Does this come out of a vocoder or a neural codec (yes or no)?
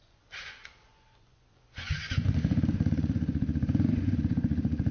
yes